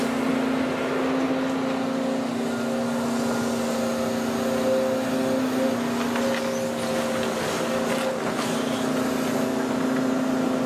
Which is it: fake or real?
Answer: real